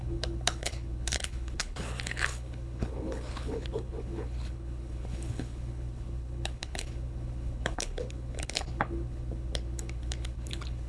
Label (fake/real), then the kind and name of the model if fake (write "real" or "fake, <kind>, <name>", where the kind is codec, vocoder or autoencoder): fake, codec, HILCodec